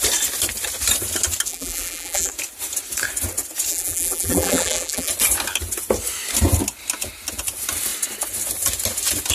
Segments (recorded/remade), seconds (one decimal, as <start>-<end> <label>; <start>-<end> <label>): 0.0-1.5 recorded; 1.5-2.3 remade; 2.3-3.7 recorded; 3.7-5.1 remade; 5.1-9.3 recorded